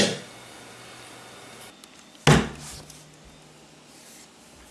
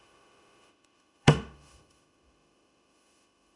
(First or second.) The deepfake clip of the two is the second